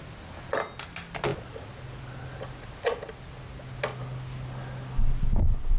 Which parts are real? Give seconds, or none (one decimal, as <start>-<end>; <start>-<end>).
0.0-5.8